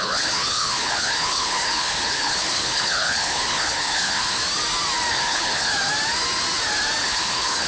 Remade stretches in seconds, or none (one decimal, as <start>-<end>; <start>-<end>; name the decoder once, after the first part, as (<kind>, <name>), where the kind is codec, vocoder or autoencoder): 0.0-4.4 (codec, HILCodec); 5.1-5.7; 7.0-7.7